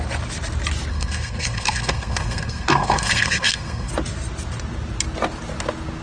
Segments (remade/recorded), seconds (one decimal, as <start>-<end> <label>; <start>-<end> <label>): 0.0-0.9 recorded; 0.9-3.9 remade; 3.9-6.0 recorded